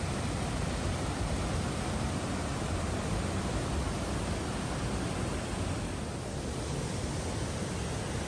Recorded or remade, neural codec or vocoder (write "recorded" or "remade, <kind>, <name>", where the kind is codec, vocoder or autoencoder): recorded